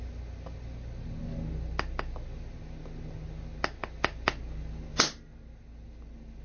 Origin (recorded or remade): recorded